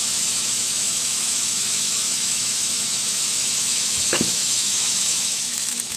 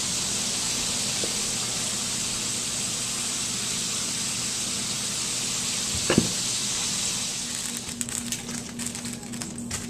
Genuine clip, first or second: second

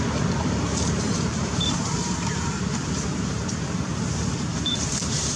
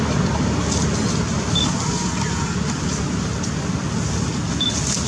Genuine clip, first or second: second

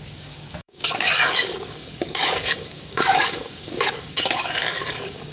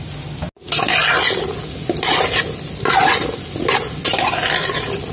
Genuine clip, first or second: second